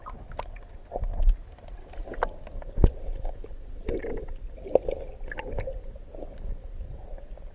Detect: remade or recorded recorded